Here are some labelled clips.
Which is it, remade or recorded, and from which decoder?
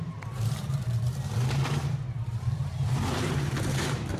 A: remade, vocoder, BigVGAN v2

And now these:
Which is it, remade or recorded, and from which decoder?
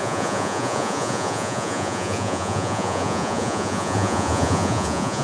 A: remade, vocoder, Vocos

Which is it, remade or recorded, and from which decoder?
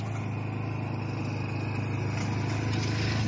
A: recorded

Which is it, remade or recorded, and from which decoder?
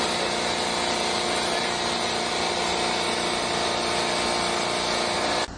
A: recorded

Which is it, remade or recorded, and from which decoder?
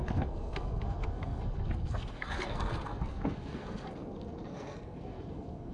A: remade, codec, SNAC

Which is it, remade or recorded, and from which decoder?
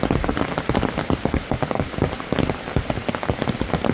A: recorded